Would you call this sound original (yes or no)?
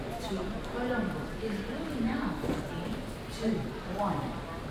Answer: yes